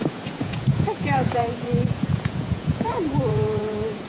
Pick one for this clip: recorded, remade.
remade